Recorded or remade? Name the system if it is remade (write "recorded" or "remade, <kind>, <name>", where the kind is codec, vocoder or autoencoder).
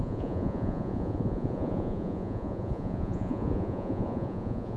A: remade, vocoder, Vocos